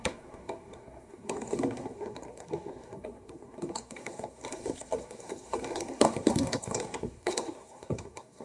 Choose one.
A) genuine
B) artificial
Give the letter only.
B